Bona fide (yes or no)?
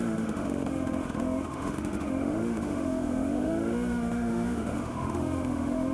no